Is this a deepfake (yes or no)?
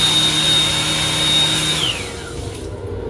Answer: no